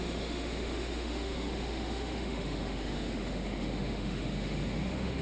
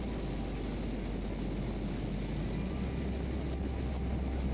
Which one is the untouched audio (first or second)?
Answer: second